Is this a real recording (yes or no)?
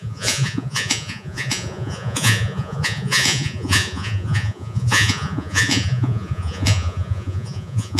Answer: no